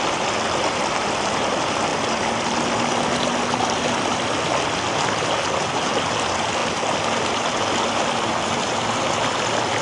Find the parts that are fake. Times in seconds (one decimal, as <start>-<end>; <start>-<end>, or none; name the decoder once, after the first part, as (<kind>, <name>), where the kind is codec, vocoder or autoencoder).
none